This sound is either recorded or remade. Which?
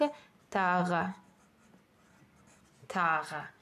recorded